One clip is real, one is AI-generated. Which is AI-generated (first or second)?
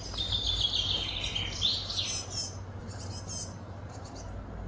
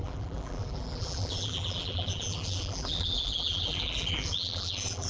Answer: second